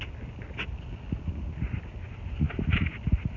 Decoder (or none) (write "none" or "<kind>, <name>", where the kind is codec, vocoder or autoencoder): none